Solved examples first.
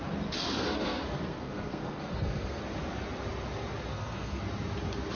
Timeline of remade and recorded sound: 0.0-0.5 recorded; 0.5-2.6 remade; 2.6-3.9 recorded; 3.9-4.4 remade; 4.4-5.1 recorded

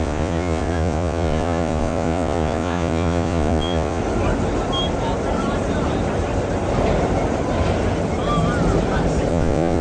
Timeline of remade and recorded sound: 0.0-4.0 remade; 4.0-9.3 recorded; 9.3-9.8 remade